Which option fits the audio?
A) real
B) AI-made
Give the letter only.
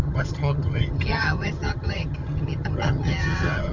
B